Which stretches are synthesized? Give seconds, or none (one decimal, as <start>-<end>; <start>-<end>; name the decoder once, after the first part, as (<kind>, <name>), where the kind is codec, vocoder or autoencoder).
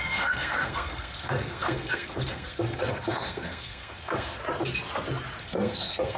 0.0-4.4 (codec, SNAC); 5.4-6.2